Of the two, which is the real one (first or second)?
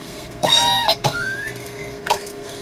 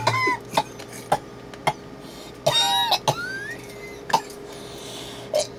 second